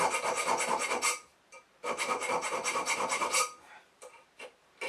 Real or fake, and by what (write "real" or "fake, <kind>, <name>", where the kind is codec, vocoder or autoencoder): fake, vocoder, BigVGAN v2